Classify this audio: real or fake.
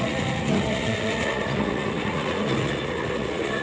fake